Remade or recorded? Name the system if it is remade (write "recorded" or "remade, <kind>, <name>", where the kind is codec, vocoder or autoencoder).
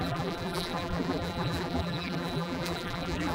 remade, vocoder, BigVGAN v2